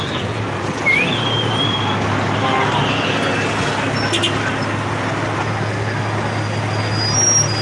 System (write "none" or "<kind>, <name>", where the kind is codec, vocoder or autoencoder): none